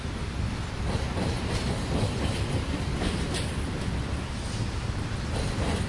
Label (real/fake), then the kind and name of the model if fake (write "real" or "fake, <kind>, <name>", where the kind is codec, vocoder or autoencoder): real